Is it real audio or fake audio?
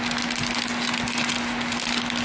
real